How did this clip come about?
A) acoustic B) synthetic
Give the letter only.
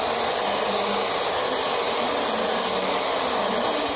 A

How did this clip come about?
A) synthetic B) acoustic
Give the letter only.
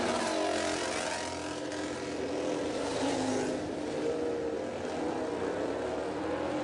B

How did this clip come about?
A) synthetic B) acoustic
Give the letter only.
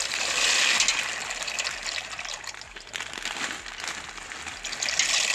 B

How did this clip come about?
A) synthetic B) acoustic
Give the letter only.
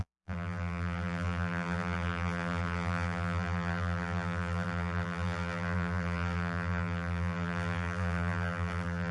A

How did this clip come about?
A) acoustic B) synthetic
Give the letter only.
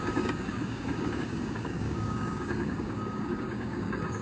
B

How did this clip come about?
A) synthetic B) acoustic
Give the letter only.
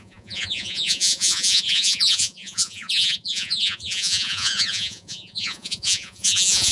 A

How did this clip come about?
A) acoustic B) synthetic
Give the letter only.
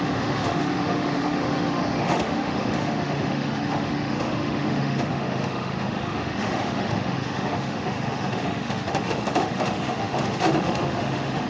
B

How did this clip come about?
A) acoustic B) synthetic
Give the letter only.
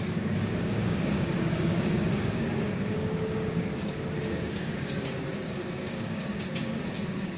B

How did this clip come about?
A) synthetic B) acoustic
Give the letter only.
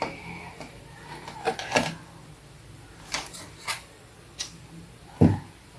B